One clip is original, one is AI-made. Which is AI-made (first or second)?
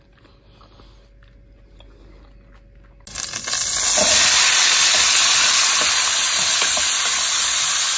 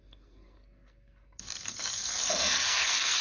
second